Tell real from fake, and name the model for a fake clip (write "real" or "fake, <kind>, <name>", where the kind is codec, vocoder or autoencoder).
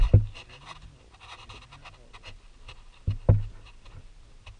real